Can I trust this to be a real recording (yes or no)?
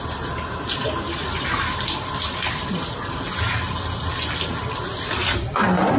yes